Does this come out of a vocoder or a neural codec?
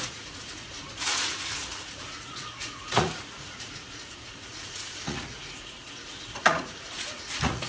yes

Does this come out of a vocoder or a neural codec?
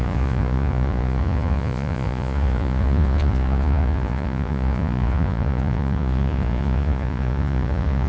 yes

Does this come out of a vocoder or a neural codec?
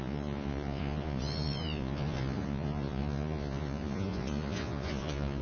yes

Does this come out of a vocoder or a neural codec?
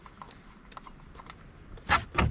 no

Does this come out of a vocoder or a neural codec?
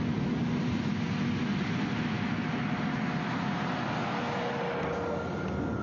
no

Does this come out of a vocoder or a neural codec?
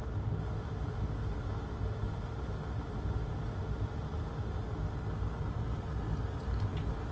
no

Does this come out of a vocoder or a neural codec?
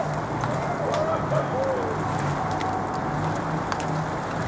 no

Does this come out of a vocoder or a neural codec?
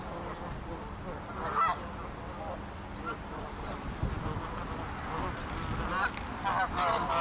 no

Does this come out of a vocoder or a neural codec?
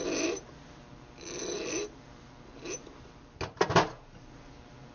no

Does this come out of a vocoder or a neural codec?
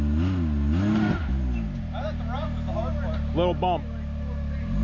no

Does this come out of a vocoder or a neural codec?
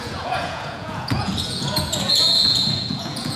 yes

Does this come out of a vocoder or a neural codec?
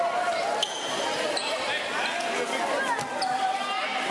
no